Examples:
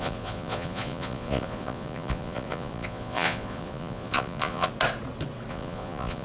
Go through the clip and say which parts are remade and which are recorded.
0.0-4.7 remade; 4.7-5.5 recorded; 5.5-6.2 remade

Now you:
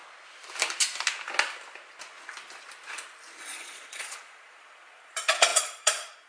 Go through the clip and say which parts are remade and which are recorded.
0.0-3.4 recorded; 3.4-6.3 remade

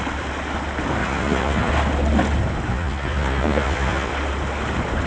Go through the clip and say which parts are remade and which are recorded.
0.0-1.0 recorded; 1.0-1.7 remade; 1.7-2.7 recorded; 2.7-4.1 remade; 4.1-5.1 recorded

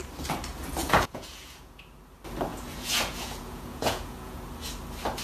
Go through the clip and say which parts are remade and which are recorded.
0.0-0.8 recorded; 0.8-1.8 remade; 1.8-2.5 recorded; 2.5-4.4 remade; 4.4-5.2 recorded

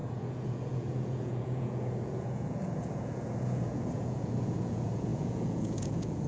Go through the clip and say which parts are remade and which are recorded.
0.0-6.3 remade

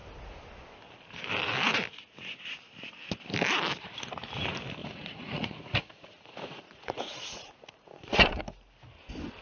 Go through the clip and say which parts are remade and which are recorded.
0.0-4.8 recorded; 4.8-8.4 remade; 8.4-9.4 recorded